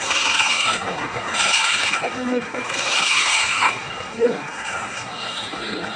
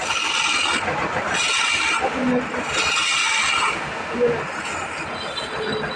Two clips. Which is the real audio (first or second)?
second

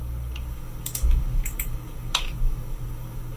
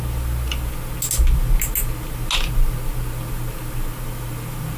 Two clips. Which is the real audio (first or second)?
second